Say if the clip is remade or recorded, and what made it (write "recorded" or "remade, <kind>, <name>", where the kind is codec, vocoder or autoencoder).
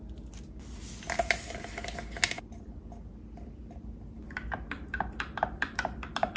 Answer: recorded